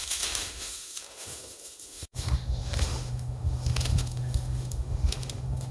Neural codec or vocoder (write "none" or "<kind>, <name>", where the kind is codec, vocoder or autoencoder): autoencoder, DAC-VAE